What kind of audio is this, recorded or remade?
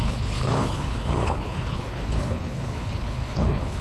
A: remade